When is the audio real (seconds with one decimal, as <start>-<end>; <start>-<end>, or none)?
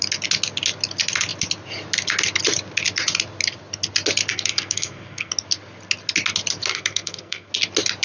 0.0-4.3; 5.3-6.7; 7.5-8.0